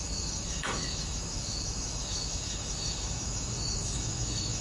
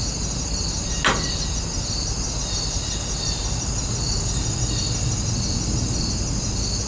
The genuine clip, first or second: second